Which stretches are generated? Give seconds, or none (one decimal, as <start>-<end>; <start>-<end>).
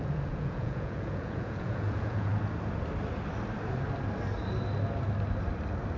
0.0-2.3